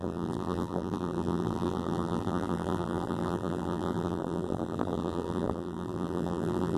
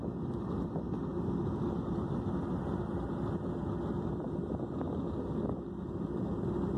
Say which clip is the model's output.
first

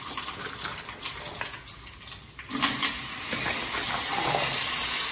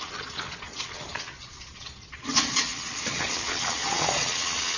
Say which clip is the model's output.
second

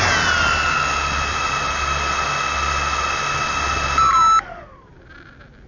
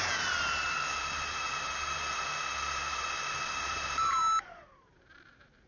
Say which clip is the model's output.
second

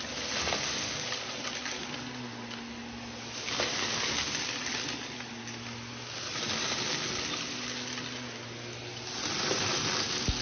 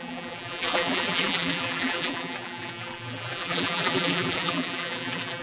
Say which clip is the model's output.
second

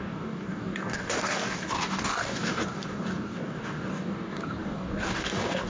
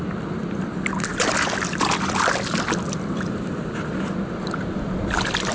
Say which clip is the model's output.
first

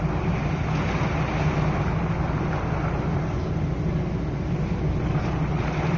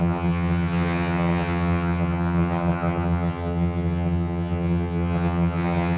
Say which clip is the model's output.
second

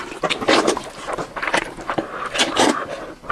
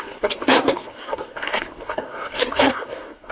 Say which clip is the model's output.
second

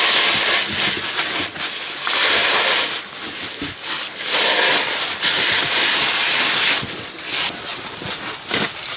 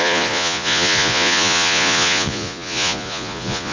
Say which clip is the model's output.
second